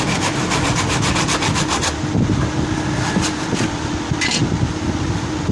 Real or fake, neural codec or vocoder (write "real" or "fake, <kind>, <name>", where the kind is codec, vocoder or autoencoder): real